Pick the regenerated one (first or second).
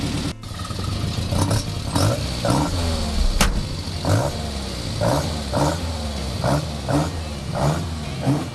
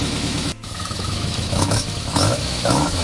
second